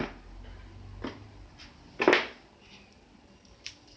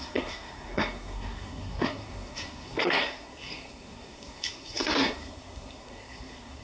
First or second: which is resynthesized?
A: second